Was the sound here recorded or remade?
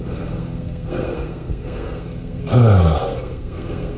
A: remade